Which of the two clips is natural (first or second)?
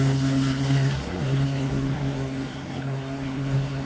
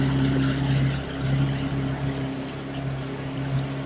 second